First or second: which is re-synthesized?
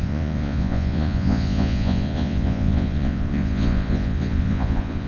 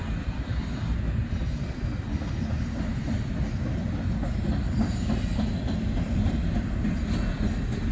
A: first